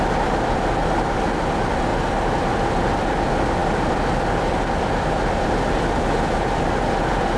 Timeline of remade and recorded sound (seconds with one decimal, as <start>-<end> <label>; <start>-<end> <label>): 0.0-7.4 recorded